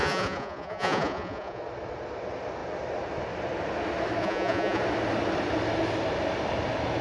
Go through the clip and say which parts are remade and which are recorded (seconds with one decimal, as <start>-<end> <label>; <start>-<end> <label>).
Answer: 0.0-1.6 remade; 1.6-4.2 recorded; 4.2-4.8 remade; 4.8-7.0 recorded